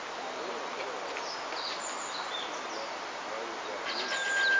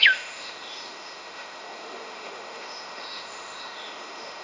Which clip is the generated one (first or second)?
second